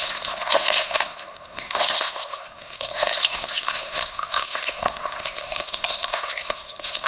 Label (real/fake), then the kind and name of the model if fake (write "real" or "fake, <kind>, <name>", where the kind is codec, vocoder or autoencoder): fake, codec, SNAC